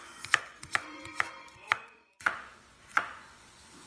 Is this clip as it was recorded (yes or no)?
no